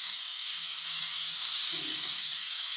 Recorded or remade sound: remade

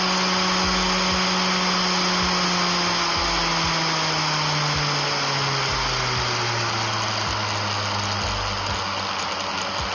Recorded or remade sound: recorded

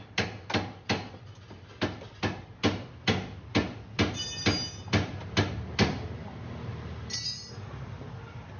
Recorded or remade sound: recorded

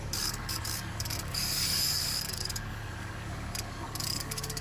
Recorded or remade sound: remade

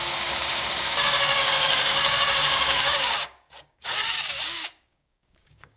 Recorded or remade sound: remade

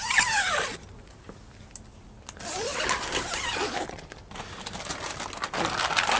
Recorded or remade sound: recorded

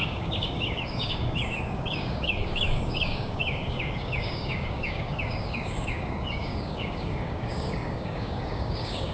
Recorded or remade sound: remade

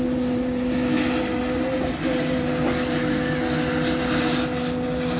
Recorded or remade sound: recorded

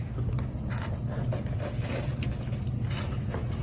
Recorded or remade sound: recorded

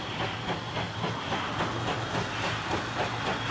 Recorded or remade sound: recorded